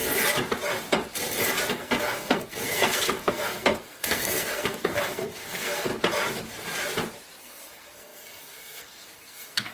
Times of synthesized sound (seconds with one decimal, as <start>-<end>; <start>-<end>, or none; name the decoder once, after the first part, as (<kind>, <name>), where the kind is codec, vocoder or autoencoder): 1.7-5.9 (codec, SNAC); 7.4-9.7